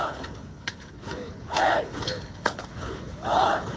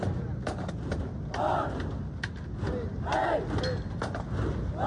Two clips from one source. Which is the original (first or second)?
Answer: second